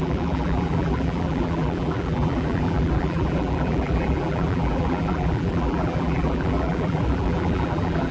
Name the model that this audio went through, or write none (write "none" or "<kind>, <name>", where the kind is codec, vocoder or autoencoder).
vocoder, BigVGAN v2